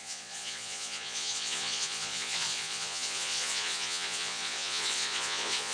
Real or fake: fake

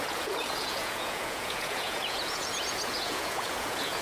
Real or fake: fake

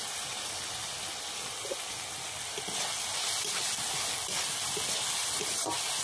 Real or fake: real